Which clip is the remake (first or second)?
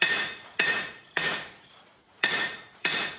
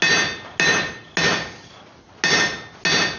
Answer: first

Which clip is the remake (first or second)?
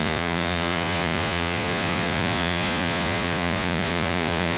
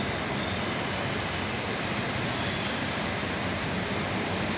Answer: first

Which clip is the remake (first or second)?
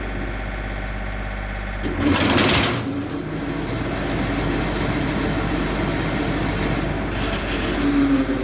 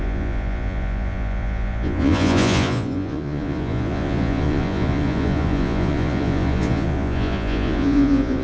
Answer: second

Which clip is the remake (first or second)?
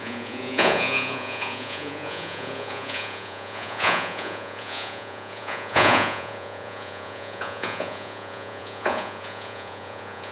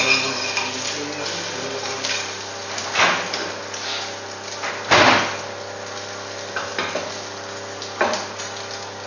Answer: first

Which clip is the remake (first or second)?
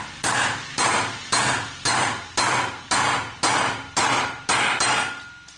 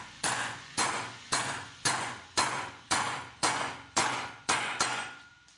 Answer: second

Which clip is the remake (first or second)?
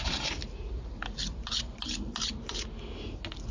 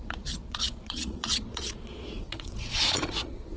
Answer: second